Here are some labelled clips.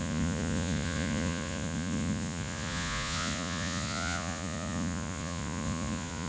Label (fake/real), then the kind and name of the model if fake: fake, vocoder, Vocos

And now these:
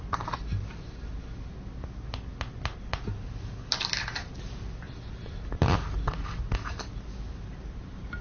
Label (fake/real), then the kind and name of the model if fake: real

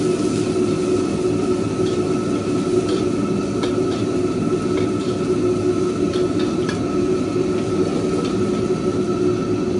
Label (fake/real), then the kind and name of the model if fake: real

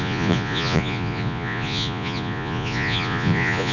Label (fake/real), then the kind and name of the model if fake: fake, vocoder, Vocos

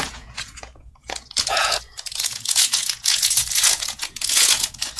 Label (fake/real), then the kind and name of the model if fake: fake, vocoder, Vocos